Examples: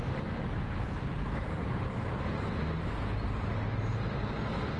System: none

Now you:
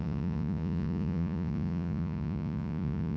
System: vocoder, Vocos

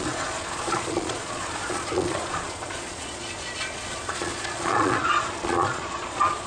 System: vocoder, Vocos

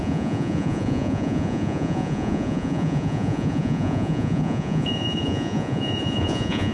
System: vocoder, Vocos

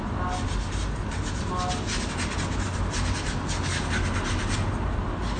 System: none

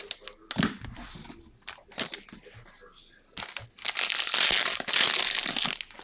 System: none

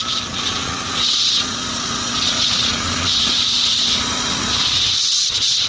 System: vocoder, Vocos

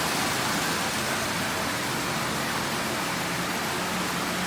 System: none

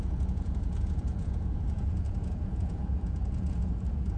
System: vocoder, Vocos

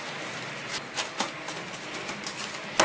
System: none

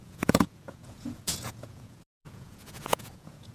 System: vocoder, Vocos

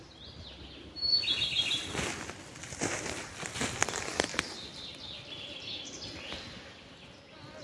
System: none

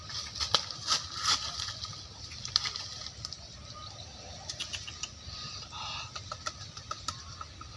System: none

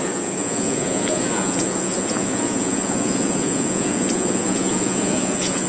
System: vocoder, Vocos